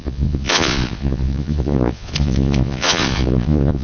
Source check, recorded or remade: remade